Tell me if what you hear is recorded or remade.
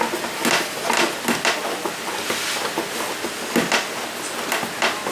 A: recorded